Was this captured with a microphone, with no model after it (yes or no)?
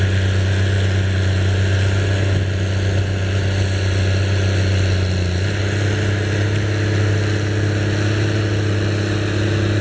yes